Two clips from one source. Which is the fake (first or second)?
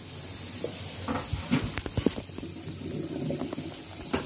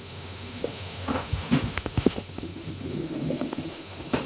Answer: second